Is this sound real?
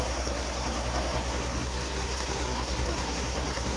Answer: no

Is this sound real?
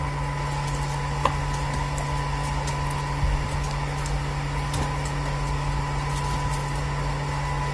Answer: yes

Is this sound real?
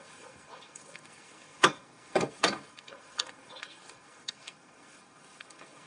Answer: no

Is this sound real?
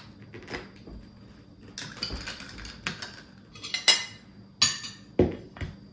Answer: yes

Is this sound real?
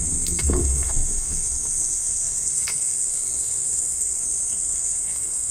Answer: no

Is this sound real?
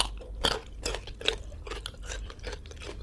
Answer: yes